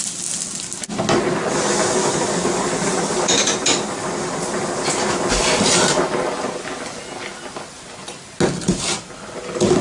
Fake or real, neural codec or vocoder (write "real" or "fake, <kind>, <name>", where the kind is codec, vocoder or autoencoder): real